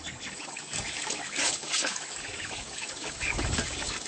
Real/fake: fake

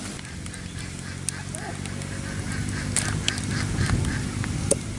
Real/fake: real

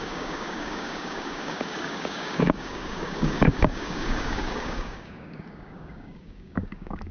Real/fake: fake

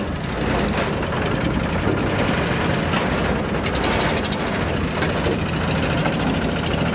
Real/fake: real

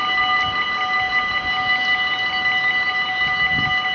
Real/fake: real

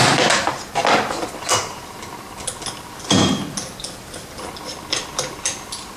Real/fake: real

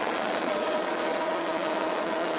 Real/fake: fake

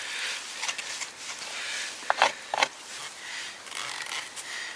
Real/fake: real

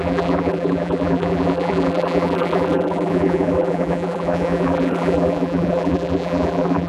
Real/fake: fake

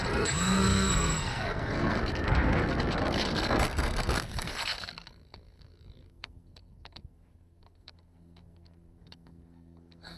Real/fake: fake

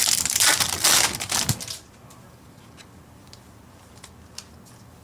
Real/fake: real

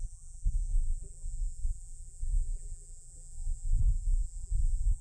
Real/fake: fake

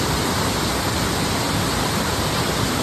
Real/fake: real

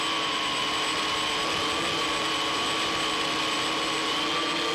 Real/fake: real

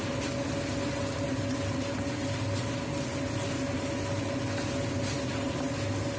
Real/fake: real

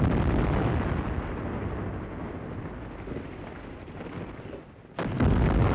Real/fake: real